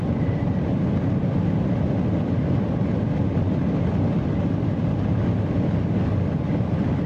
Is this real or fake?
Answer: real